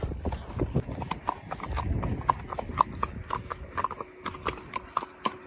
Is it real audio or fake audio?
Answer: real